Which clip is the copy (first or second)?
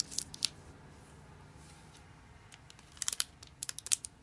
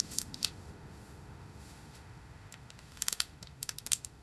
second